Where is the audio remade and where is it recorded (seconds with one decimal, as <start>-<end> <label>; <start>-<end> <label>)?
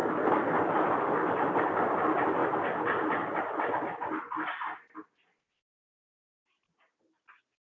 0.0-7.6 recorded